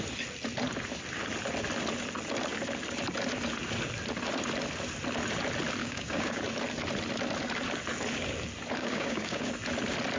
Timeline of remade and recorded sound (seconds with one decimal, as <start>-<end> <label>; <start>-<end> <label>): 0.0-5.8 recorded; 5.8-6.4 remade; 6.4-8.8 recorded; 8.8-9.5 remade; 9.5-10.2 recorded